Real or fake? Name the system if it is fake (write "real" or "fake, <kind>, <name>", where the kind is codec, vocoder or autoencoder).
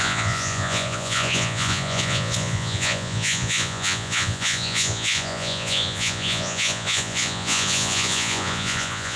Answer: fake, vocoder, Vocos